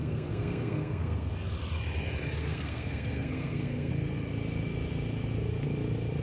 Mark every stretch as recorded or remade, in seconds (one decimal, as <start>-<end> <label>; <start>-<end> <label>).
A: 0.0-1.3 remade; 1.3-2.4 recorded; 2.4-3.9 remade; 3.9-6.2 recorded